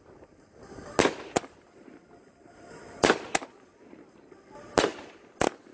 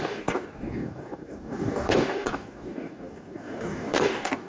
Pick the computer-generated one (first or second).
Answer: second